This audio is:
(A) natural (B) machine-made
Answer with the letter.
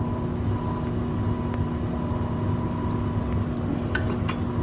A